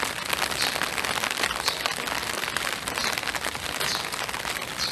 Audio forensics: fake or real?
real